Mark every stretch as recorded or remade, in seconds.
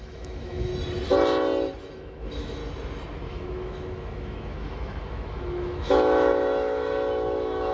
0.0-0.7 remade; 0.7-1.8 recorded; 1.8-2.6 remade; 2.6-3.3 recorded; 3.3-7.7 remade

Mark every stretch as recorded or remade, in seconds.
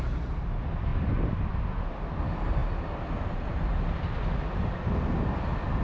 0.0-5.8 recorded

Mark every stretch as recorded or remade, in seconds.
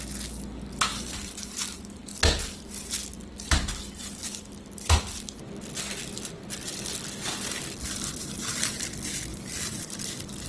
0.0-8.2 recorded; 8.2-8.8 remade; 8.8-9.3 recorded; 9.3-10.0 remade; 10.0-10.5 recorded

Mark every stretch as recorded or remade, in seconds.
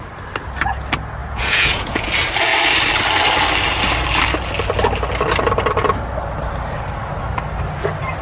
0.0-1.2 recorded; 1.2-2.1 remade; 2.1-8.2 recorded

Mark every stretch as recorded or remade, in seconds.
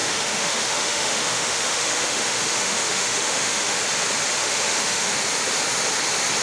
0.0-3.8 remade; 3.8-4.4 recorded; 4.4-5.1 remade; 5.1-6.4 recorded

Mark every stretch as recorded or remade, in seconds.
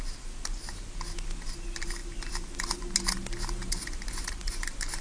0.0-5.0 recorded